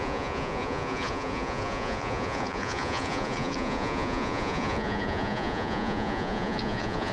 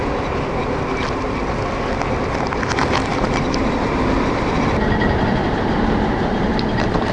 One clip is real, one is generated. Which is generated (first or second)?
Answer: first